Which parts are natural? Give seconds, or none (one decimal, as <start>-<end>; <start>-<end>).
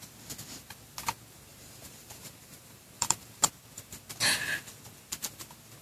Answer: 0.0-1.5; 3.5-5.8